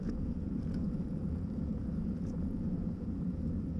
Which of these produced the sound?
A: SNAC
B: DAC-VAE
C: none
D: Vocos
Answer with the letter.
D